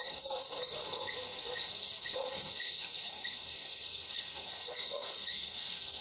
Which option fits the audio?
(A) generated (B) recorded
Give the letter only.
A